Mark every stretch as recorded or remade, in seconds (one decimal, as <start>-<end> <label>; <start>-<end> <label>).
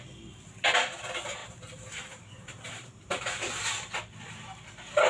0.0-1.4 recorded; 1.4-3.2 remade; 3.2-5.1 recorded